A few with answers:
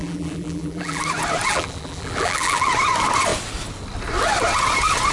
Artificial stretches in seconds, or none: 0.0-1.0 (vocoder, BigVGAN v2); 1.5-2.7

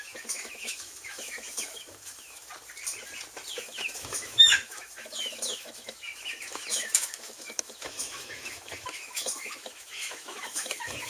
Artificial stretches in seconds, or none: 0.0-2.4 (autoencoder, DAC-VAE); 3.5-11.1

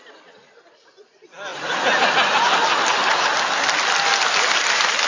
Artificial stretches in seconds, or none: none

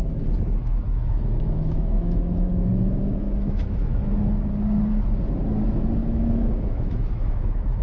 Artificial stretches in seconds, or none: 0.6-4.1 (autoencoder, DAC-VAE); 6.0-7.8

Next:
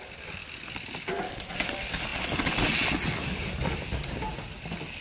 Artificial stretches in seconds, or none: none

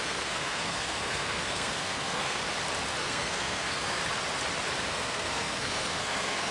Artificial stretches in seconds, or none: 0.0-2.4 (codec, SNAC); 3.0-4.0; 4.9-6.5